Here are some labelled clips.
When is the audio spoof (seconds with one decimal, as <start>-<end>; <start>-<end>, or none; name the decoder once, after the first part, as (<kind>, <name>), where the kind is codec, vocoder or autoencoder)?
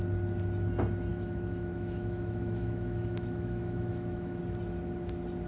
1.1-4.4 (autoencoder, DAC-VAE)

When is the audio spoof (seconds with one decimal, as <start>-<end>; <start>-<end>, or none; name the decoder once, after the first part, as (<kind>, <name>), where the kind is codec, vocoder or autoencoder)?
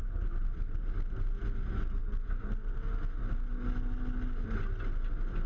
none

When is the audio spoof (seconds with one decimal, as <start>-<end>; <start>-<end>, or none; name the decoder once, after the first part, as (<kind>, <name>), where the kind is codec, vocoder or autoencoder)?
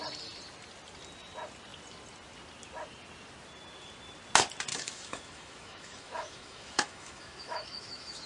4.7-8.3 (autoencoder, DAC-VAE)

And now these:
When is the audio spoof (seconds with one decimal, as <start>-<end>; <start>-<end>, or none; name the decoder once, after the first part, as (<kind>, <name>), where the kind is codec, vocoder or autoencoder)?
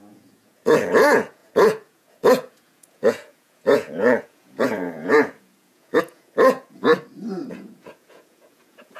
0.0-6.9 (vocoder, Vocos); 7.5-9.0